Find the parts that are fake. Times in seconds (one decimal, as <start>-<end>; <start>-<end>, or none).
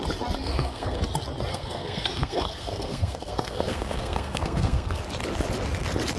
0.4-1.0; 1.5-5.0